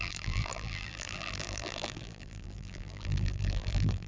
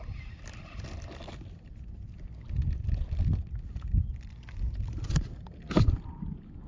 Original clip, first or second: second